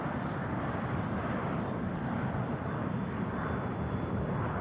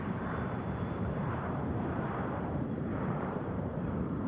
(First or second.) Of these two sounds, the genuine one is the first